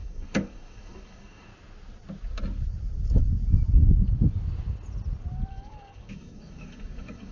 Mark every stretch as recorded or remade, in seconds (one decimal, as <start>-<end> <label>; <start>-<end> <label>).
0.0-1.5 remade; 1.5-5.5 recorded; 5.5-7.3 remade